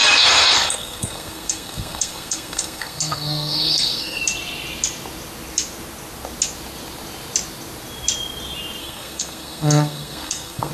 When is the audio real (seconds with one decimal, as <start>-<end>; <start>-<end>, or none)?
4.2-8.8